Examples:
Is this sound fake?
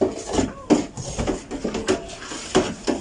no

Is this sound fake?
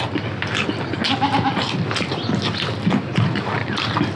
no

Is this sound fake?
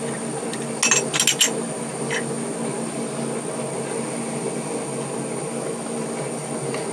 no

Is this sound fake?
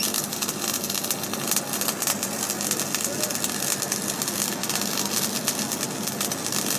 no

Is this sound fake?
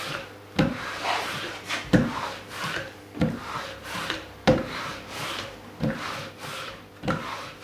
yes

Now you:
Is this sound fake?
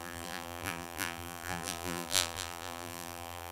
yes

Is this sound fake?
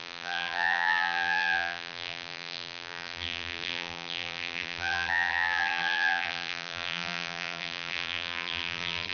yes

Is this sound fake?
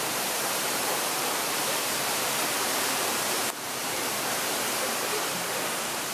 yes